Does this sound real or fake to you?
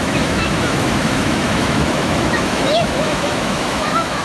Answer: fake